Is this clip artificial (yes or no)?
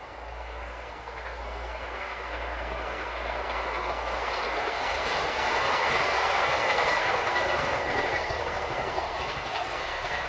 yes